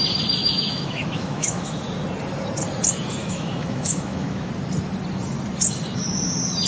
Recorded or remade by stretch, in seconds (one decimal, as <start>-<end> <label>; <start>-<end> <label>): 0.0-0.4 recorded; 0.4-1.8 remade; 1.8-3.2 recorded; 3.2-4.5 remade; 4.5-6.7 recorded